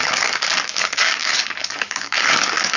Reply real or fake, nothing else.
fake